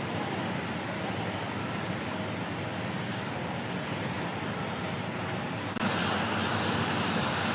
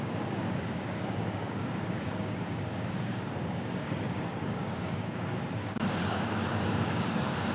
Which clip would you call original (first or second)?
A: first